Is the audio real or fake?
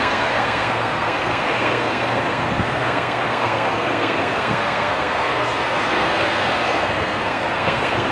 fake